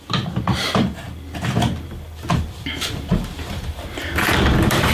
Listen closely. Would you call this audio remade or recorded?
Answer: recorded